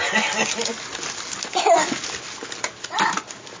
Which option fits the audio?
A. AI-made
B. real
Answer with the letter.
B